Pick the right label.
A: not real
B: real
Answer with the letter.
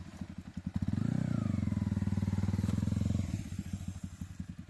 B